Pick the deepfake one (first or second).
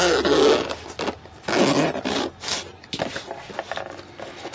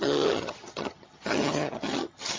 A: second